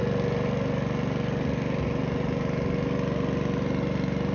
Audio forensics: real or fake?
real